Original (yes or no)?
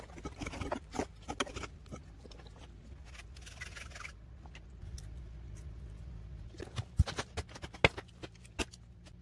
yes